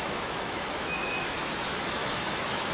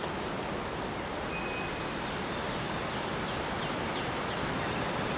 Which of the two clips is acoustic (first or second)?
second